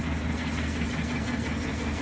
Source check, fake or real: fake